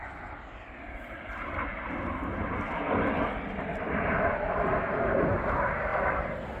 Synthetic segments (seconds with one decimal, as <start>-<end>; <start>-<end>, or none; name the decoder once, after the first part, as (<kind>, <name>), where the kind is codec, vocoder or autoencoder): none